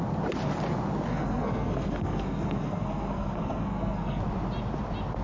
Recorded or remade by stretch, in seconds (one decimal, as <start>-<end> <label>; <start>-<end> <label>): 0.0-1.1 recorded; 1.1-4.2 remade; 4.2-5.2 recorded